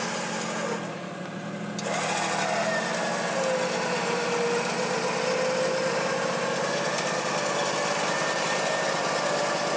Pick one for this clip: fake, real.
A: real